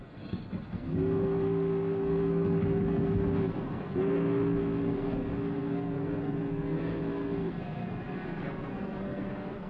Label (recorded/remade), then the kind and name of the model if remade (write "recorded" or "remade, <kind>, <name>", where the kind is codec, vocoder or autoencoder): remade, codec, SNAC